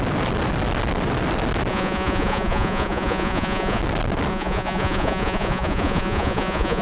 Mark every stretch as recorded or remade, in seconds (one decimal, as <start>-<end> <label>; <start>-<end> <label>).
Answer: 0.0-1.7 recorded; 1.7-3.8 remade; 3.8-4.3 recorded; 4.3-6.8 remade